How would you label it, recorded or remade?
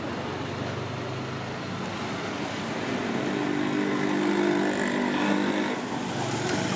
recorded